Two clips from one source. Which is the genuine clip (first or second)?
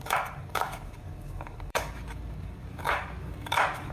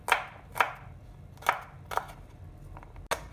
second